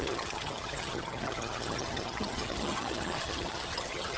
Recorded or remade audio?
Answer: remade